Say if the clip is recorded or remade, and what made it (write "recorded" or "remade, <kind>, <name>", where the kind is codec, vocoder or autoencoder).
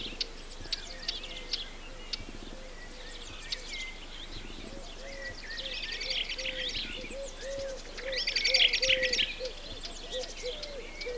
recorded